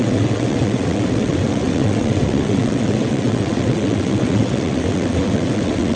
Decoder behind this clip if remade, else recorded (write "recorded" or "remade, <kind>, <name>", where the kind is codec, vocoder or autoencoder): remade, vocoder, WaveNeXt